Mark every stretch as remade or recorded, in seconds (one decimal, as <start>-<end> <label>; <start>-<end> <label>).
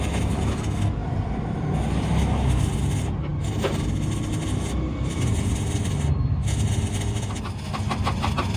0.0-1.0 recorded; 1.0-1.5 remade; 1.5-8.6 recorded